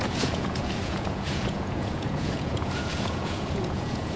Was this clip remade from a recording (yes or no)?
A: yes